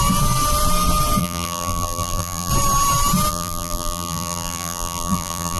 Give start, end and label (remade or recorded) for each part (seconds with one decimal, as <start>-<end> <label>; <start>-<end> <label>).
0.0-1.2 recorded; 1.2-2.5 remade; 2.5-3.3 recorded; 3.3-5.6 remade